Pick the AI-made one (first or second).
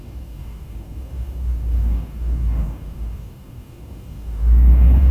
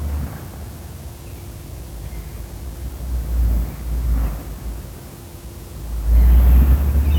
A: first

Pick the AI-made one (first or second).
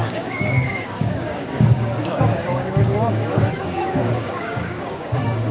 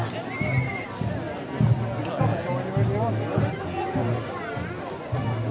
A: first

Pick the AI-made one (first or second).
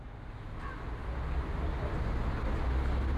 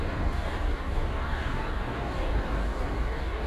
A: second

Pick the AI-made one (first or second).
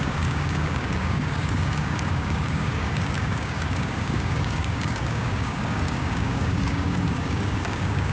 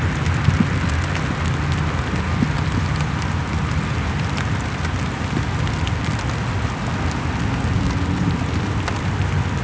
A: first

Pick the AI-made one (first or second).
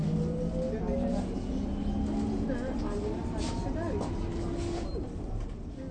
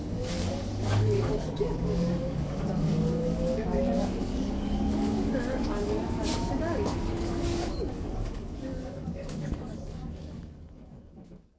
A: second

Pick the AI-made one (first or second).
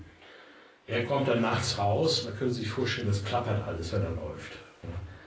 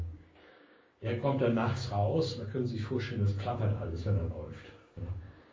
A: second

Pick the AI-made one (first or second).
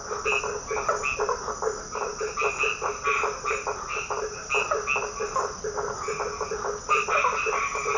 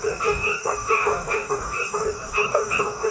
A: second